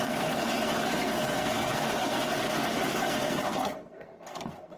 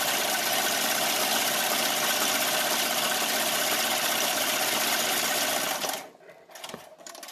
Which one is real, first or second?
second